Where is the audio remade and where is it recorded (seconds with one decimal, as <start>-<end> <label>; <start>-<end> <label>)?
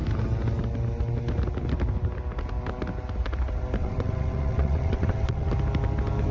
0.0-3.8 recorded; 3.8-5.5 remade; 5.5-6.3 recorded